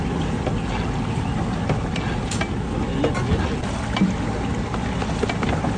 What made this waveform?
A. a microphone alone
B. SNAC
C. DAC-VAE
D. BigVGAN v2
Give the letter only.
A